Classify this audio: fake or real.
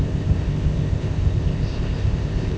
fake